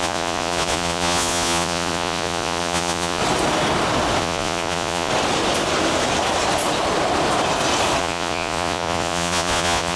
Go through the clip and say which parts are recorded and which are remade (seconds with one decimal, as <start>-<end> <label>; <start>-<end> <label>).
0.0-3.2 remade; 3.2-4.2 recorded; 4.2-5.1 remade; 5.1-8.0 recorded; 8.0-10.0 remade